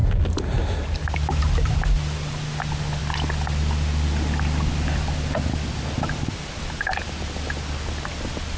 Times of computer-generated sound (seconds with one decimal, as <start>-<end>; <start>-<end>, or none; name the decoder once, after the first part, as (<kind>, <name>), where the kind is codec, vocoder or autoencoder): none